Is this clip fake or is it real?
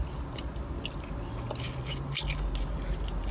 real